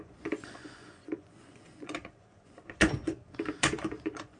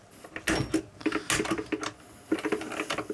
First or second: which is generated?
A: first